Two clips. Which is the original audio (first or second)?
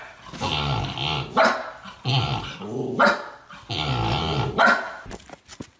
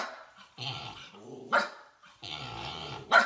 first